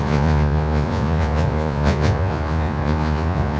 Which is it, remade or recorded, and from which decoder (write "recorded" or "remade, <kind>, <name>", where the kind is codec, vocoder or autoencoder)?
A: remade, vocoder, Vocos